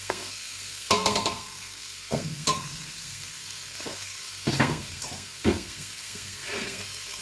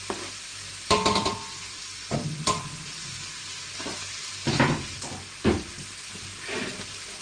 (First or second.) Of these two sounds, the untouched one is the second